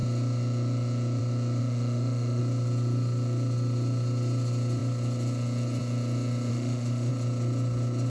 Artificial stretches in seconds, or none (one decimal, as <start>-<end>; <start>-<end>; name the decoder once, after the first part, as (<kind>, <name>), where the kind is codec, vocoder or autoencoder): 1.6-2.4 (autoencoder, DAC-VAE); 6.5-7.1